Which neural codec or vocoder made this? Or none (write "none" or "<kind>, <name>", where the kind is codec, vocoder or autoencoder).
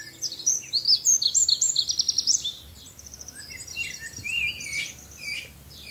vocoder, BigVGAN v2